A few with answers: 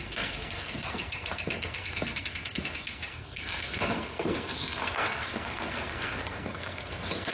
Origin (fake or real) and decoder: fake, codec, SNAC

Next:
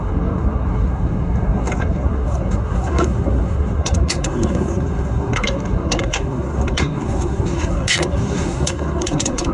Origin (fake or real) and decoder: fake, codec, SNAC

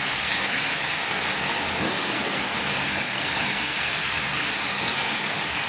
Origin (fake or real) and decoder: fake, codec, SNAC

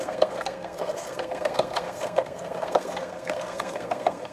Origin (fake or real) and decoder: fake, codec, SNAC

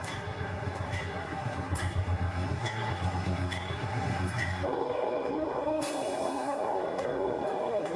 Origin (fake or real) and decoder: fake, codec, SNAC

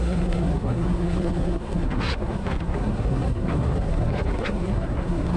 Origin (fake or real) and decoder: fake, codec, SNAC